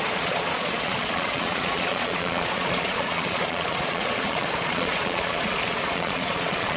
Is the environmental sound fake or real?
fake